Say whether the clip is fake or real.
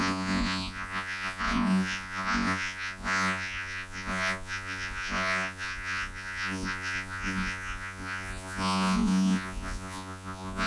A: fake